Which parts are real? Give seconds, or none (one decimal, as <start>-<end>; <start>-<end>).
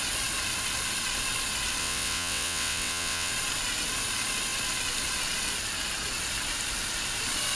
0.0-1.8; 3.3-7.6